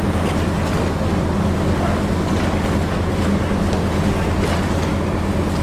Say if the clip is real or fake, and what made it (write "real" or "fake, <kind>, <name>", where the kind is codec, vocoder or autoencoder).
real